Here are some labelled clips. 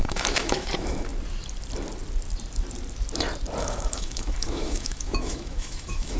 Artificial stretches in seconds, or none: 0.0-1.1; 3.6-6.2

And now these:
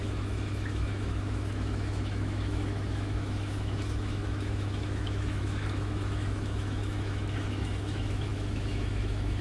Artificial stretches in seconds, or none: 0.0-9.4

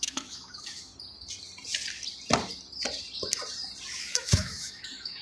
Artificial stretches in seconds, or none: 0.0-0.9; 4.0-5.2

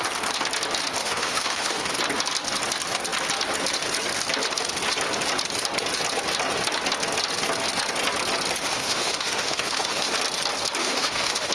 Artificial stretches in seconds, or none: 1.0-1.9; 8.7-10.1; 10.8-11.5

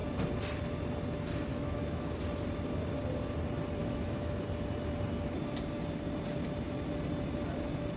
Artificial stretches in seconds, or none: 1.5-2.2; 3.8-4.4

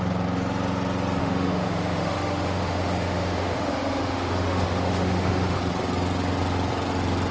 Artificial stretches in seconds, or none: 1.2-5.6